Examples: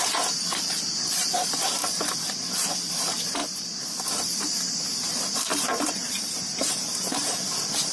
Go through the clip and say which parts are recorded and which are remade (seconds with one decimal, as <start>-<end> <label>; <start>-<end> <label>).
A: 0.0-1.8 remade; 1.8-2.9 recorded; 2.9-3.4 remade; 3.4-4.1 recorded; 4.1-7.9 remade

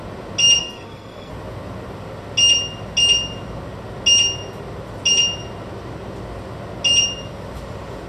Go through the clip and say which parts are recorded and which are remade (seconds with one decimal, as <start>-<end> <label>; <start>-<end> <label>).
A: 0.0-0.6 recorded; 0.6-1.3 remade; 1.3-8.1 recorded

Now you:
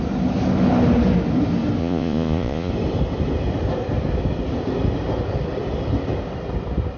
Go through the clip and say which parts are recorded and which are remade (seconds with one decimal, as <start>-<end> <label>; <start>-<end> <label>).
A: 0.0-1.8 recorded; 1.8-2.7 remade; 2.7-7.0 recorded

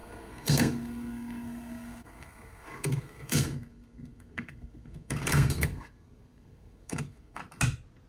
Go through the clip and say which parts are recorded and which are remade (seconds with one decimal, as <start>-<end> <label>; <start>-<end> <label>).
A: 0.0-7.4 remade; 7.4-8.1 recorded

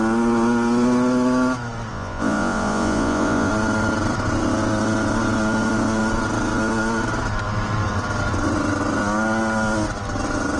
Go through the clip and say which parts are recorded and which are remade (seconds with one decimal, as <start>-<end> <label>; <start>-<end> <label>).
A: 0.0-1.9 recorded; 1.9-3.5 remade; 3.5-10.6 recorded

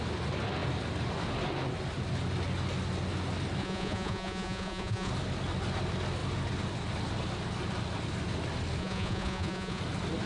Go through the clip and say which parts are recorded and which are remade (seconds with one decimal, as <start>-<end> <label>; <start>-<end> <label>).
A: 0.0-3.6 recorded; 3.6-5.1 remade; 5.1-8.8 recorded; 8.8-9.8 remade; 9.8-10.3 recorded

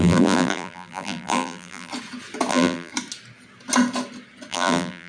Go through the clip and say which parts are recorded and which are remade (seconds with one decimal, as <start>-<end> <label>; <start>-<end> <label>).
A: 0.0-1.9 remade; 1.9-2.5 recorded; 2.5-2.9 remade; 2.9-4.5 recorded; 4.5-5.1 remade

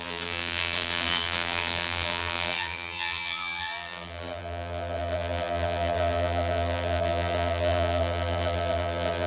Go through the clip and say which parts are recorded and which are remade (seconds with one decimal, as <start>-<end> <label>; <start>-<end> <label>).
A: 0.0-9.3 remade